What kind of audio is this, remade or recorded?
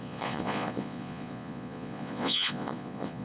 remade